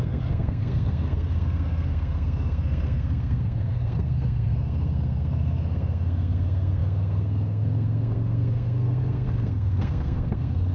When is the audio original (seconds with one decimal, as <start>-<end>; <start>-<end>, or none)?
none